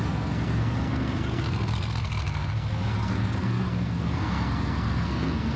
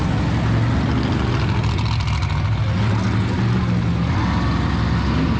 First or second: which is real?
second